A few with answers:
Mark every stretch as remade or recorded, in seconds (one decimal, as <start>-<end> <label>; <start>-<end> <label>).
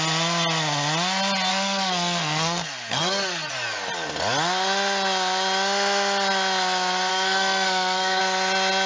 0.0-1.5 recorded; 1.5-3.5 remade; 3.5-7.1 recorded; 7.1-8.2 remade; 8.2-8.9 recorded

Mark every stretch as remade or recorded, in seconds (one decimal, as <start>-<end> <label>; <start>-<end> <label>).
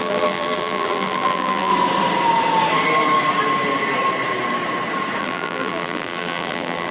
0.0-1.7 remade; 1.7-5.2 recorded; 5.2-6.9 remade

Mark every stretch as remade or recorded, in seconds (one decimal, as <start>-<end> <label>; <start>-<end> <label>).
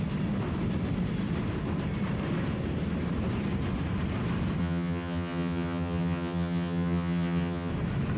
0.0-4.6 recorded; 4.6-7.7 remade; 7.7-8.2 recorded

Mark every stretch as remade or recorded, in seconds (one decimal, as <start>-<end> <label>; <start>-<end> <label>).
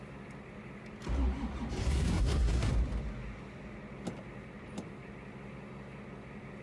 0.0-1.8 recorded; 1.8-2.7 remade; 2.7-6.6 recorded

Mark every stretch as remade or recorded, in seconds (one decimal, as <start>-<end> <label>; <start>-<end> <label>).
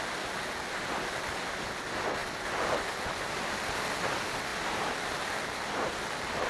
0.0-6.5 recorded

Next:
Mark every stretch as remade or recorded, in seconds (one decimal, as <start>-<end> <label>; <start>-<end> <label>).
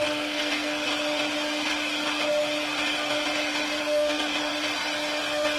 0.0-0.9 remade; 0.9-3.8 recorded; 3.8-4.5 remade; 4.5-5.6 recorded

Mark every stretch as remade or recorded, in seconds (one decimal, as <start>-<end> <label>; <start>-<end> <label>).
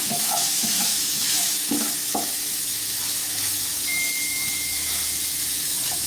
0.0-5.0 remade; 5.0-5.5 recorded; 5.5-6.1 remade